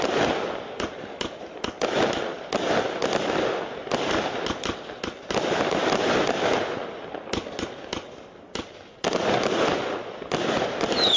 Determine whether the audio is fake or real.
real